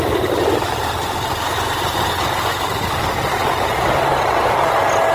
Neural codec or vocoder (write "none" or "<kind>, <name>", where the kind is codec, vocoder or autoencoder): none